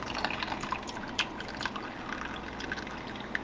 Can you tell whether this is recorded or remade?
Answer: recorded